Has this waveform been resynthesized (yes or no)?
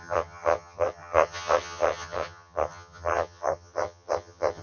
yes